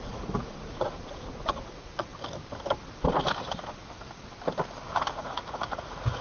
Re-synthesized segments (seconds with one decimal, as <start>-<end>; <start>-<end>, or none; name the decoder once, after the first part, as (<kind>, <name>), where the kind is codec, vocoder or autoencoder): 0.0-2.1 (vocoder, Vocos); 5.1-6.2